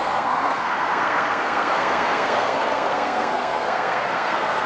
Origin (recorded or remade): remade